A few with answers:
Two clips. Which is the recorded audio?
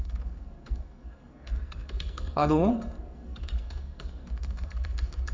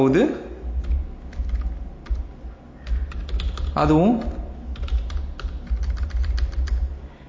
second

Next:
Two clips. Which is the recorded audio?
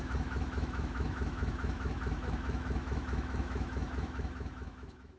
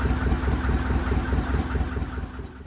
second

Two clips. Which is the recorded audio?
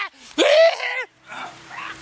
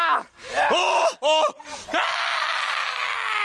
second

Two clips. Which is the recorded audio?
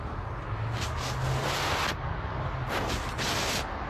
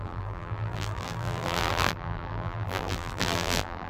first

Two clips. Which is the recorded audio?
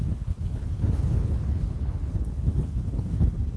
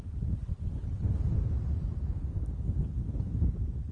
second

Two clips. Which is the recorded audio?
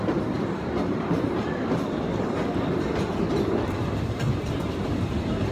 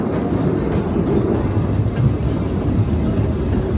second